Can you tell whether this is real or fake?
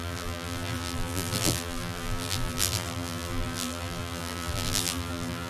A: fake